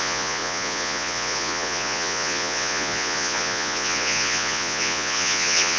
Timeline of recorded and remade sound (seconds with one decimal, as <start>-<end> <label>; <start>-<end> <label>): 0.0-5.8 remade